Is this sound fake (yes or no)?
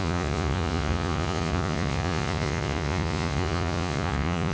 yes